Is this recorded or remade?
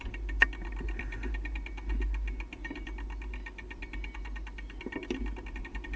recorded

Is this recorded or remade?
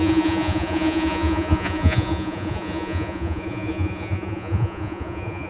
remade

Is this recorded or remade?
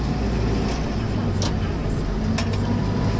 recorded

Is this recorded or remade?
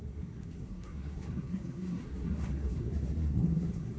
remade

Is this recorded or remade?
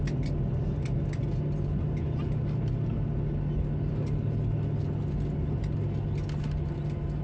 recorded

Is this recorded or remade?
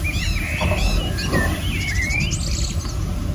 recorded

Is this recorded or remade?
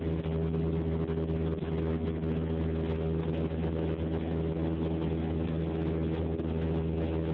recorded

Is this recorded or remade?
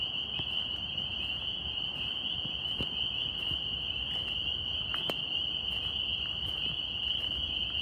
recorded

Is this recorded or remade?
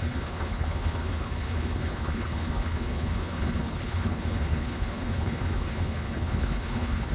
remade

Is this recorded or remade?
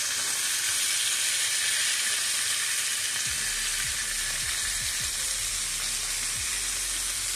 recorded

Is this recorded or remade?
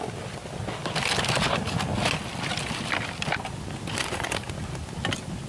recorded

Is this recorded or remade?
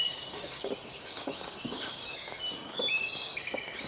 remade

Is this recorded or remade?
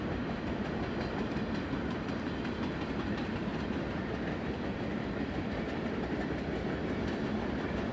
recorded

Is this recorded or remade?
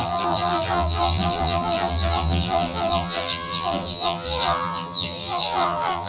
remade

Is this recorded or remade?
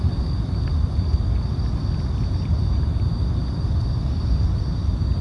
recorded